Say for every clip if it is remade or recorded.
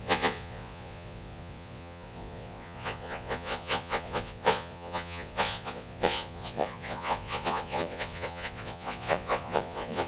remade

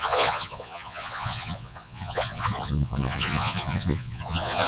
remade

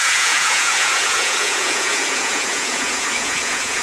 remade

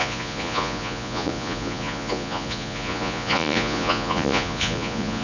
remade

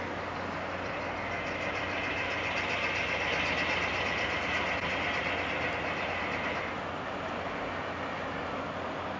recorded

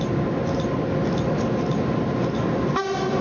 recorded